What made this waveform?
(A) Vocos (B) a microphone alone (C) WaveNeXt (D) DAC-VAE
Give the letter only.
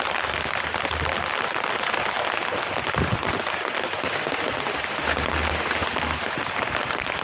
B